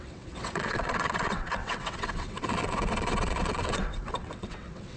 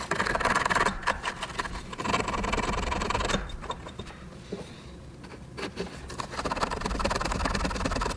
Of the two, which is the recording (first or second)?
second